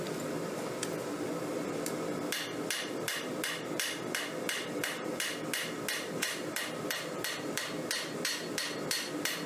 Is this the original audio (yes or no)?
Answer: yes